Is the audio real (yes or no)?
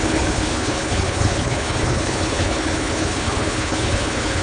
no